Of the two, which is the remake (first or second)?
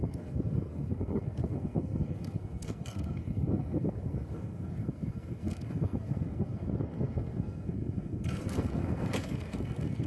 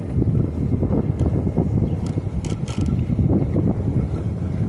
first